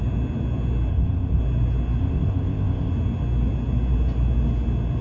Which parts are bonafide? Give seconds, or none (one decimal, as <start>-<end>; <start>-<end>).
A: 0.0-0.9; 1.4-2.0; 2.9-5.0

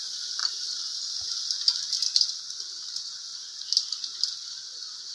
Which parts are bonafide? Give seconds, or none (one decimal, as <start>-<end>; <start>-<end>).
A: 0.0-5.1